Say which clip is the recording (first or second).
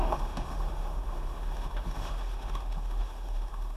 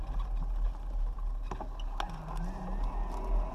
second